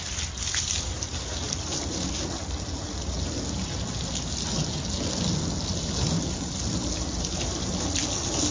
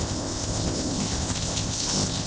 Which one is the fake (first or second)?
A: second